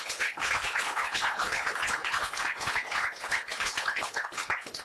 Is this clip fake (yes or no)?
yes